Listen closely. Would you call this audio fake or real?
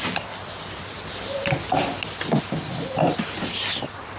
real